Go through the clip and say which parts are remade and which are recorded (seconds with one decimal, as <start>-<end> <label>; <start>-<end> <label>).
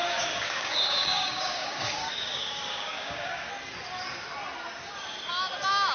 0.0-3.5 remade; 3.5-5.9 recorded